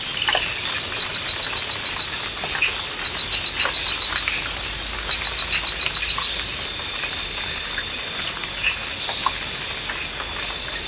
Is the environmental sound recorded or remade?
recorded